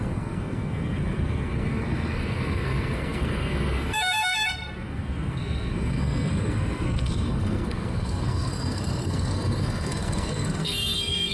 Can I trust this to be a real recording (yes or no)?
no